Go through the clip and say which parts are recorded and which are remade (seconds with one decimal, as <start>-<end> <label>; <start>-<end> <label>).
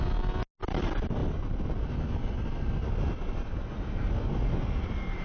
0.0-5.2 recorded